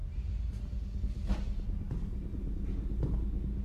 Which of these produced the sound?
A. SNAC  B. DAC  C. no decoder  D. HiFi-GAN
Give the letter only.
C